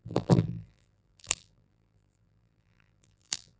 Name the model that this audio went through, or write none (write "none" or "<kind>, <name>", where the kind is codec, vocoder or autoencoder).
vocoder, BigVGAN v2